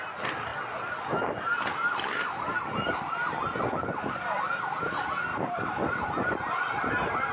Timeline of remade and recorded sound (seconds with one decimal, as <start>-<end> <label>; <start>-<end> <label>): 0.0-5.3 recorded; 5.3-7.3 remade